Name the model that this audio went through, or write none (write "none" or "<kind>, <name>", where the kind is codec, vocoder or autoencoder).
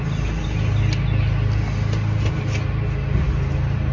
none